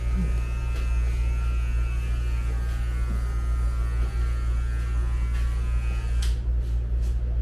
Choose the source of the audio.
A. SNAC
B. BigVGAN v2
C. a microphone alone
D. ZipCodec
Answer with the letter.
C